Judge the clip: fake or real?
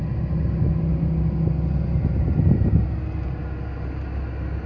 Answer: real